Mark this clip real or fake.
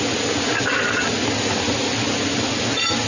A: real